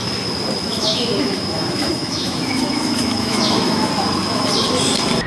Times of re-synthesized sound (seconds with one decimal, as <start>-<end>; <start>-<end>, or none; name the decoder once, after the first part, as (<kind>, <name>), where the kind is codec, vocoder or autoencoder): 0.7-3.9 (autoencoder, DAC-VAE)